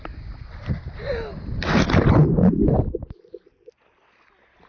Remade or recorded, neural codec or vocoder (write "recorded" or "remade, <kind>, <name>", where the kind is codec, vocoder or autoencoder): recorded